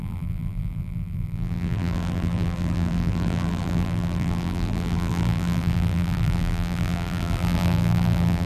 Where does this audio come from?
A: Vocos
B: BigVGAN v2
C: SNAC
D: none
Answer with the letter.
B